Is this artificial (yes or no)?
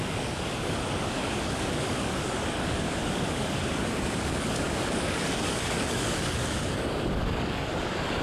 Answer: yes